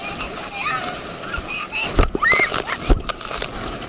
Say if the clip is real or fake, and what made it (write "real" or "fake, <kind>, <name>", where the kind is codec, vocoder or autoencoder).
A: real